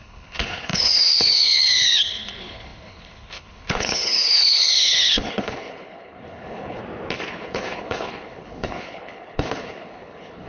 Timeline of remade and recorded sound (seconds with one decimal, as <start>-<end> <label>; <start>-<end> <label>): 0.0-6.8 remade; 6.8-7.3 recorded; 7.3-10.5 remade

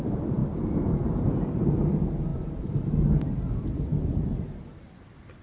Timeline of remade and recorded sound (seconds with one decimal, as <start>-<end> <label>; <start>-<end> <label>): 0.0-0.4 remade; 0.4-1.3 recorded; 1.3-3.9 remade; 3.9-5.4 recorded

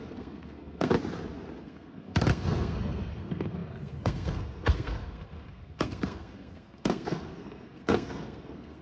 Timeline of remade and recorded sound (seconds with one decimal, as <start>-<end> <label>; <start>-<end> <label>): 0.0-0.9 remade; 0.9-1.6 recorded; 1.6-8.8 remade

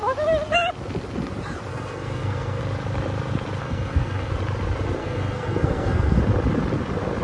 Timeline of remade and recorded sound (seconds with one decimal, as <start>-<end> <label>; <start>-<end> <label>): 0.0-1.7 recorded; 1.7-2.6 remade; 2.6-3.6 recorded; 3.6-4.3 remade; 4.3-5.0 recorded; 5.0-6.2 remade; 6.2-7.2 recorded

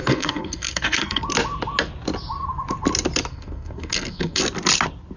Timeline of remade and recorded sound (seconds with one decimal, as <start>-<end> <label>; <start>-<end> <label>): 0.0-1.2 remade; 1.2-3.3 recorded; 3.3-4.4 remade; 4.4-5.2 recorded

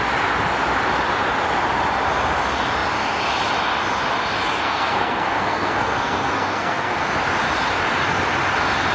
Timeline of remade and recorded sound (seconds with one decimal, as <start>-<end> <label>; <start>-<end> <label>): 0.0-4.5 recorded; 4.5-7.0 remade; 7.0-8.9 recorded

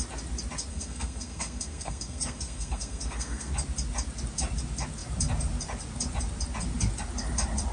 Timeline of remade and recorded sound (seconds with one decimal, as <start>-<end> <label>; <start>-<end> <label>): 0.0-0.7 recorded; 0.7-3.5 remade; 3.5-7.7 recorded

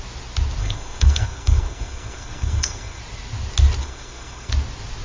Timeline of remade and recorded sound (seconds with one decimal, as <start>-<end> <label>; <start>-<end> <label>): 0.0-0.6 recorded; 0.6-3.0 remade; 3.0-3.8 recorded; 3.8-4.5 remade; 4.5-5.0 recorded